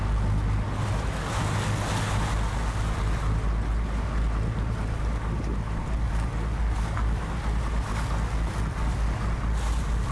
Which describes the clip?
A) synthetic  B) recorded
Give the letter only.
B